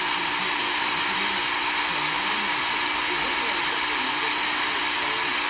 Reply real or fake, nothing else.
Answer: real